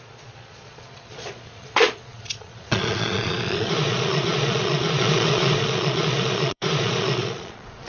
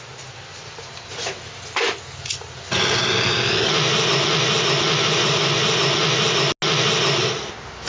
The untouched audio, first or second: second